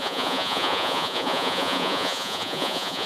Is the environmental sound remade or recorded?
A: remade